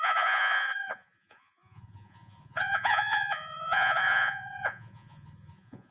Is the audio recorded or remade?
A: remade